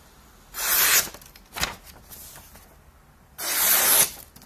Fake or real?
real